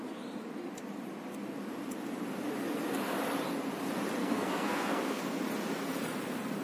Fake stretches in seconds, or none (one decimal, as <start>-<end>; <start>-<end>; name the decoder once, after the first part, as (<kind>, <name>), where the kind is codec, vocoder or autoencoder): 4.2-5.2 (codec, SNAC)